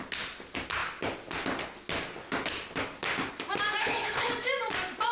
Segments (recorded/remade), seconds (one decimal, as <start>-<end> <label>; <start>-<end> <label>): 0.0-3.8 recorded; 3.8-4.3 remade; 4.3-5.1 recorded